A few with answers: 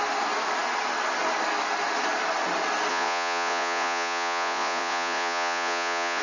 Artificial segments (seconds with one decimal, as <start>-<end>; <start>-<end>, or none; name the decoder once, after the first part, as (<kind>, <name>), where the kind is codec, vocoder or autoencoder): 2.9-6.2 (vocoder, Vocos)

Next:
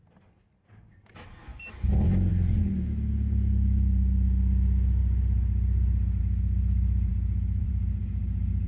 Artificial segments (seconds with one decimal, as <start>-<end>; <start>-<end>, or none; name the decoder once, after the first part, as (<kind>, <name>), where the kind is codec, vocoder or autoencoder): 1.5-2.6 (vocoder, BigVGAN v2); 7.1-7.7

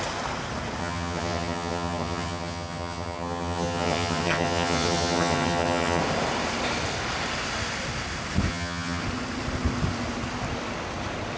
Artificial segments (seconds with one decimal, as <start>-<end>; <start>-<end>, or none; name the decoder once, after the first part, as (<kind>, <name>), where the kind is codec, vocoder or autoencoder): 0.8-6.0 (vocoder, HiFi-GAN); 8.5-9.0